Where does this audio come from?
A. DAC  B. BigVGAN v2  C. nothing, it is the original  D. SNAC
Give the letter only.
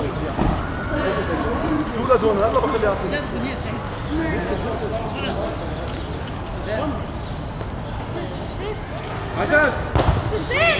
C